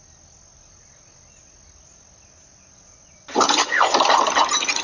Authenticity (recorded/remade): recorded